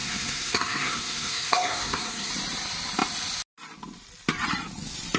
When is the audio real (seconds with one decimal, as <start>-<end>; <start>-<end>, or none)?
2.3-5.2